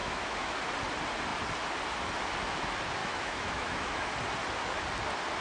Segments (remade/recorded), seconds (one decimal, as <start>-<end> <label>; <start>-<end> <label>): 0.0-0.6 remade; 0.6-3.0 recorded; 3.0-4.1 remade; 4.1-5.4 recorded